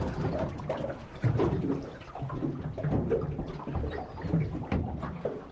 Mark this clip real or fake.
real